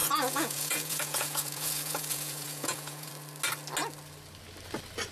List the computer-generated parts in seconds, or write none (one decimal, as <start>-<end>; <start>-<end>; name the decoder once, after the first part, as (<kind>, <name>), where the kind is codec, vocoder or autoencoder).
0.0-3.1 (vocoder, Vocos)

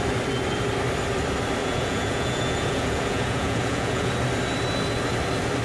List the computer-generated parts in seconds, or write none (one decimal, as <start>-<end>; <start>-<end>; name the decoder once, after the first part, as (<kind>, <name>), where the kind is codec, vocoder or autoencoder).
1.6-4.1 (vocoder, Vocos)

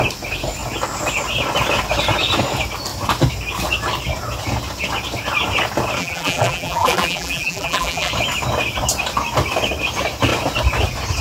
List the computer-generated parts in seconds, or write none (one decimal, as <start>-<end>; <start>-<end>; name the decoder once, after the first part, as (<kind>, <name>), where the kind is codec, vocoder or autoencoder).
6.0-8.1 (vocoder, BigVGAN v2)

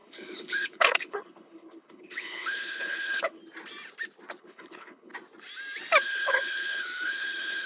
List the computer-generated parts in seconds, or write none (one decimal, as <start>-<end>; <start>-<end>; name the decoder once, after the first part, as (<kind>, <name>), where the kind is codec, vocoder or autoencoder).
0.0-3.4 (codec, HILCodec); 4.4-5.1; 6.0-7.7